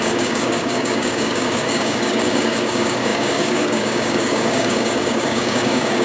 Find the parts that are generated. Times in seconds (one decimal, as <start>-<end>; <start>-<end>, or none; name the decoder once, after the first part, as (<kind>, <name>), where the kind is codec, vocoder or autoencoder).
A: 0.0-6.0 (codec, DAC)